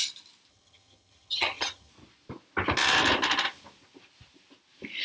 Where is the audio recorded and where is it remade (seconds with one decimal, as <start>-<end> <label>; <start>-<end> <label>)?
0.0-0.5 recorded; 0.5-1.9 remade; 1.9-5.0 recorded